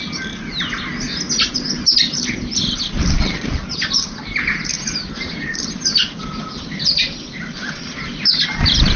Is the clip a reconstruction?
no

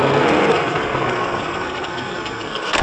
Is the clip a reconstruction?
yes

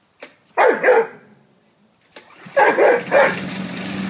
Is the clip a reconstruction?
no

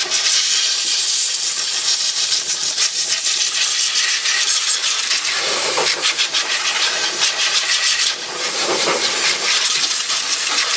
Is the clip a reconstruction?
yes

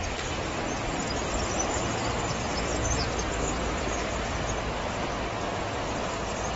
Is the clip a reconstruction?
no